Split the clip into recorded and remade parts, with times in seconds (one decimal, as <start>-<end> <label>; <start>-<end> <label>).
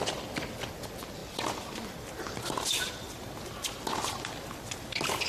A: 0.0-5.3 recorded